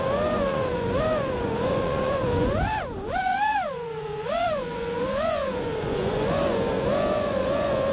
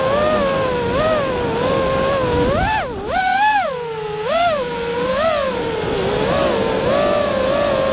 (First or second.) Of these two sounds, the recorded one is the second